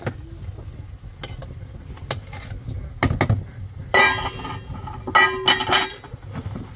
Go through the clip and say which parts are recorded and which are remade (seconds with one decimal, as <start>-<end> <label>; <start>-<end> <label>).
0.0-6.8 recorded